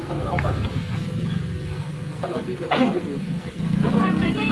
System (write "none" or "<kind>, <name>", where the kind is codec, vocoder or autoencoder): codec, SNAC